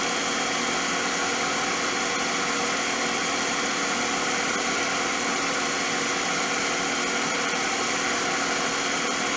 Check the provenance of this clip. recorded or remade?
recorded